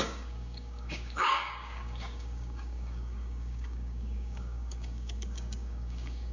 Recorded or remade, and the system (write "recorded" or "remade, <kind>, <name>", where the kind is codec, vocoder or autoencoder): remade, codec, DAC